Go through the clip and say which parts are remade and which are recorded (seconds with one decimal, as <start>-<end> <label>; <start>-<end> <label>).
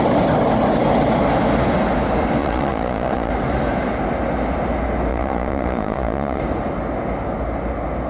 0.0-2.4 recorded; 2.4-3.3 remade; 3.3-5.1 recorded; 5.1-6.4 remade; 6.4-8.1 recorded